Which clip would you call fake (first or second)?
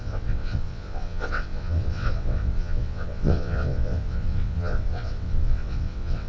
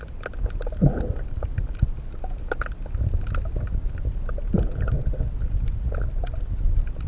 first